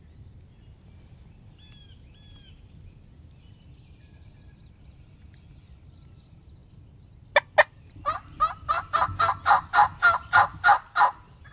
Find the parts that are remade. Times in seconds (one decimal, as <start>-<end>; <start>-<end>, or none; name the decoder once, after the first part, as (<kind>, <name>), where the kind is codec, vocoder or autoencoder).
none